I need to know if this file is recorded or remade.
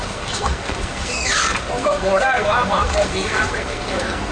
remade